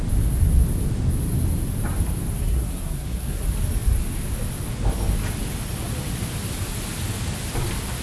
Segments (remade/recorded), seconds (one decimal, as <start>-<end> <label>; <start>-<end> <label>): 0.0-2.4 recorded; 2.4-3.4 remade; 3.4-8.0 recorded